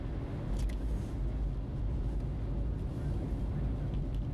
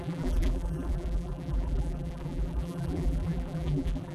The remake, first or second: second